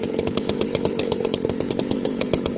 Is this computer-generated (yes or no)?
yes